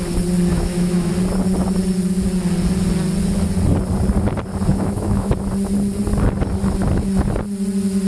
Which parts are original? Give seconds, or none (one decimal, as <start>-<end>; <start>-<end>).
0.0-0.5; 1.1-4.7; 5.3-8.1